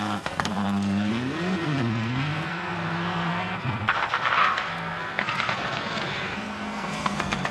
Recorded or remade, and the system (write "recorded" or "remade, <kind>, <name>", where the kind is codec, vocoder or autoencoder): remade, codec, SNAC